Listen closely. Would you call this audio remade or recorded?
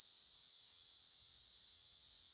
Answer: remade